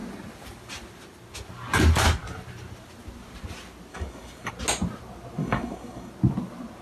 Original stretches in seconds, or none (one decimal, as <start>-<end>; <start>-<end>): 0.0-3.9; 4.5-5.4; 6.1-6.8